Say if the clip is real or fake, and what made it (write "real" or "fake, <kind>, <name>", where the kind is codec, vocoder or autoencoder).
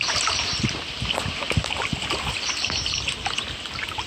real